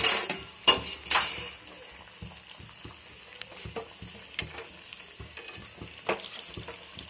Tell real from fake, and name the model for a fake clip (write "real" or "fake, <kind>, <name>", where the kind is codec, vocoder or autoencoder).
real